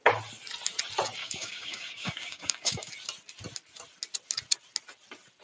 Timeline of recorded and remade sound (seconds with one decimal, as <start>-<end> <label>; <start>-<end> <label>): 0.0-1.2 recorded; 1.2-2.9 remade; 2.9-5.4 recorded